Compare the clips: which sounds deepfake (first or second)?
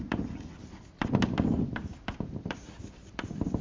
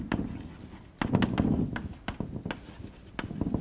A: first